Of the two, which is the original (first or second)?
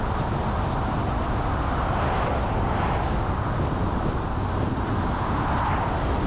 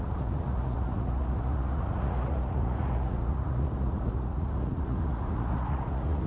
first